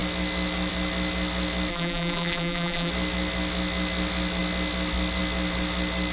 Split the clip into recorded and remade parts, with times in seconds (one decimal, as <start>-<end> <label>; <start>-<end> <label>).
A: 0.0-1.7 recorded; 1.7-2.9 remade; 2.9-6.1 recorded